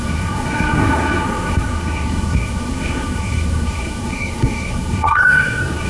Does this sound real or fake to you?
fake